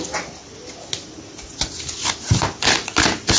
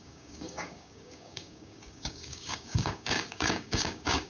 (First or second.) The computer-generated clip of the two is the second